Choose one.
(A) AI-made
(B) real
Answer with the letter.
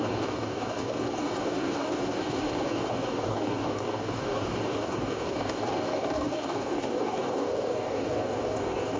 A